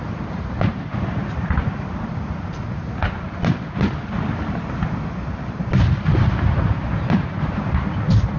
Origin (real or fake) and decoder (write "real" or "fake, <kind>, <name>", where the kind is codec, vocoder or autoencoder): real